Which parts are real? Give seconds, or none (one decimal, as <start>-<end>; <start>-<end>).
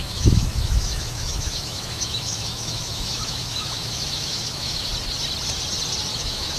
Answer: 4.9-6.1